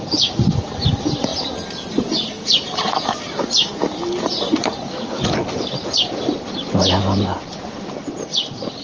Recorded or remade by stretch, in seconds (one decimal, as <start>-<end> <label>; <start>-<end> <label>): 0.0-8.8 recorded